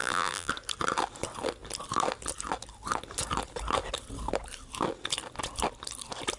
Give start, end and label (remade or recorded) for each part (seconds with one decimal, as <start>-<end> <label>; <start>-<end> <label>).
0.0-0.5 remade; 0.5-6.4 recorded